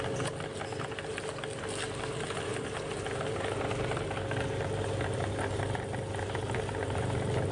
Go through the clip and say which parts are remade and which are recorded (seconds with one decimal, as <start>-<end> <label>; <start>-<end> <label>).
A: 0.0-7.5 recorded